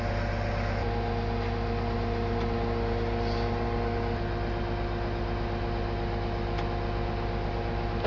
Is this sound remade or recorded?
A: recorded